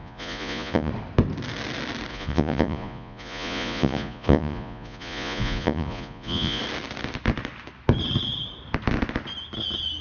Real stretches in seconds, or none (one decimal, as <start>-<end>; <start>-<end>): 0.9-2.1; 6.6-10.0